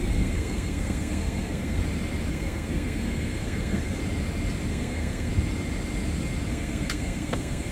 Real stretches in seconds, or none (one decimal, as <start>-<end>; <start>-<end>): 1.8-2.3; 4.0-4.7; 5.3-6.5

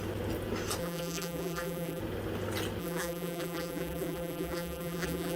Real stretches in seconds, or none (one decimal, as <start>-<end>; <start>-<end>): 0.0-0.8; 2.0-2.8

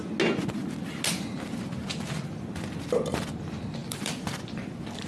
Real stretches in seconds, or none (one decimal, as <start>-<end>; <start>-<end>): 0.0-3.8; 4.4-5.1

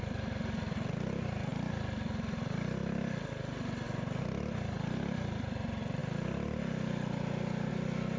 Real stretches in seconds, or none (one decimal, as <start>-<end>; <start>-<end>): 0.0-8.2

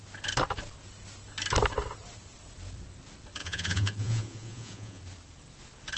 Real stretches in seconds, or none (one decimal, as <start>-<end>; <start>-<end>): 0.0-3.4; 5.0-6.0

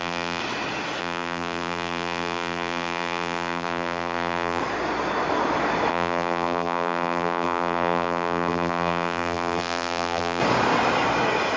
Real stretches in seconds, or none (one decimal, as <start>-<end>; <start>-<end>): 0.4-1.0; 4.6-5.9; 10.4-11.6

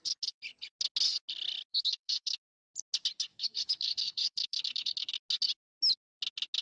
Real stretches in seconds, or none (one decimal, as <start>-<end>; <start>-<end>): 0.0-1.7; 2.5-3.3; 5.1-6.6